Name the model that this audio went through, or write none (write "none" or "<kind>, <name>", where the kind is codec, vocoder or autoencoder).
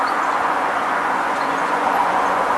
vocoder, Vocos